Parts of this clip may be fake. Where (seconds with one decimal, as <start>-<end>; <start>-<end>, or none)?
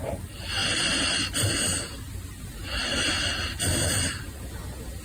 none